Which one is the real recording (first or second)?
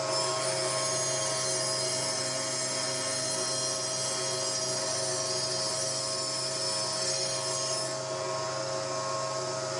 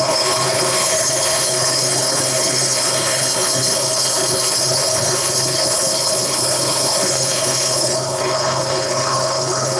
first